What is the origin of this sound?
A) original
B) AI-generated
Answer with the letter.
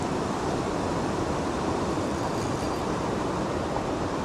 B